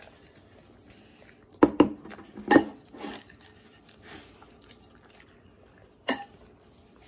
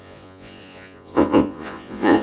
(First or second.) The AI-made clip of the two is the second